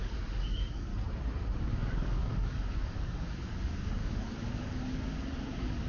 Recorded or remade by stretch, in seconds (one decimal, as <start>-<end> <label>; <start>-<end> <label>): 0.0-0.9 remade; 0.9-1.6 recorded; 1.6-5.9 remade